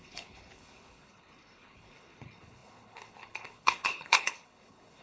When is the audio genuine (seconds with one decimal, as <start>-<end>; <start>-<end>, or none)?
none